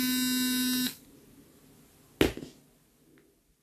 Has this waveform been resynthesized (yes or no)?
no